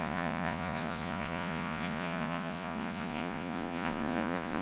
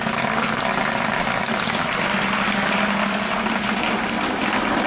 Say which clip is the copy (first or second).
first